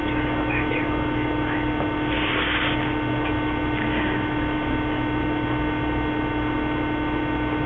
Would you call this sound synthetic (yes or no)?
no